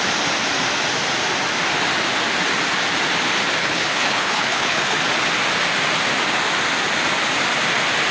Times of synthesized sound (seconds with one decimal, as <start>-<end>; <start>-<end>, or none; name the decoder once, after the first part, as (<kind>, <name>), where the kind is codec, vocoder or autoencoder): 3.6-5.0 (codec, HILCodec)